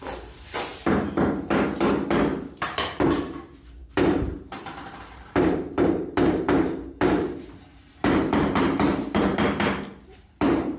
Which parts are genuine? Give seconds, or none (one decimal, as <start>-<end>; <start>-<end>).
none